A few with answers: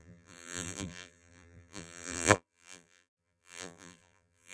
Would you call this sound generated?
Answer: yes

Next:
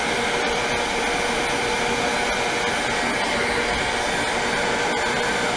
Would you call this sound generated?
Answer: no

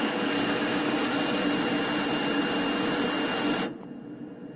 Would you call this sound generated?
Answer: no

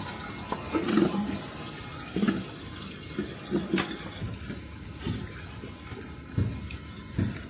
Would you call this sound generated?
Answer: no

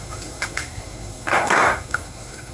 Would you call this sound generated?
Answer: yes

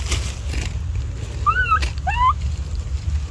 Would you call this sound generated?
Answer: no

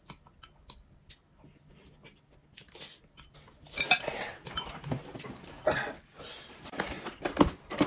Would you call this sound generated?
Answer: no